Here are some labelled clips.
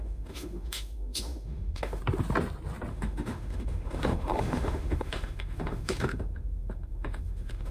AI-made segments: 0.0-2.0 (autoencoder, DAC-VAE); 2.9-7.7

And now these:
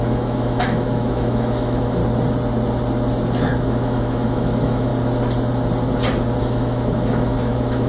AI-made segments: 0.0-2.0 (autoencoder, DAC-VAE); 3.6-4.9; 6.4-7.9

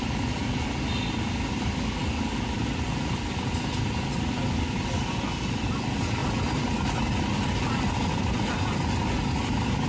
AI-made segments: none

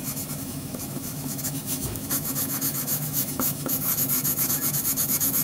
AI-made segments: 0.0-5.4 (autoencoder, DAC-VAE)